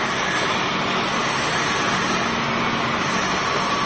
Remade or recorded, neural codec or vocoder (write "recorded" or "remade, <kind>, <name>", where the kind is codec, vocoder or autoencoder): recorded